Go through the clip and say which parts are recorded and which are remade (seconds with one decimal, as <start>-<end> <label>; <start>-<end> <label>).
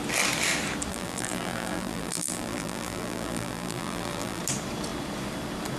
0.0-0.9 recorded; 0.9-4.4 remade; 4.4-5.8 recorded